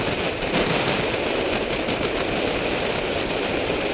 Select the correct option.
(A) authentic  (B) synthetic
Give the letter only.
A